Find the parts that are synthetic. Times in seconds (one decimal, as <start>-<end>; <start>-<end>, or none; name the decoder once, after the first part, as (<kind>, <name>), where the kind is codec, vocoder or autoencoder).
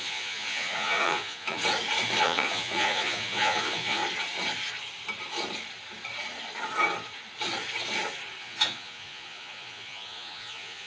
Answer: 0.0-1.6 (vocoder, Vocos); 2.2-4.0; 8.4-10.9